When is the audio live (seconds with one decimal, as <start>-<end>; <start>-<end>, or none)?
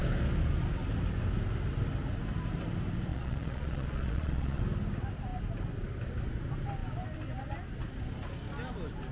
0.0-3.1; 4.6-9.1